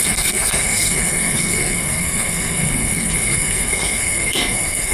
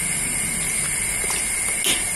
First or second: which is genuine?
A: second